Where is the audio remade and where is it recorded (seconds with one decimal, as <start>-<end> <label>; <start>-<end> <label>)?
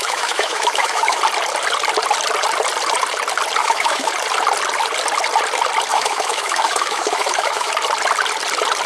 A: 0.0-1.2 remade; 1.2-3.6 recorded; 3.6-4.1 remade; 4.1-5.9 recorded; 5.9-7.7 remade; 7.7-8.9 recorded